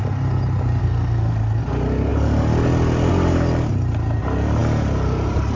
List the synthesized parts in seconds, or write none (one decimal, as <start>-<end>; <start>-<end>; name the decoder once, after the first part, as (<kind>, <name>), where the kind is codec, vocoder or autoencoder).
0.8-1.6 (codec, SNAC)